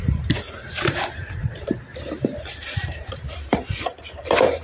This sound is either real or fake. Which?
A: fake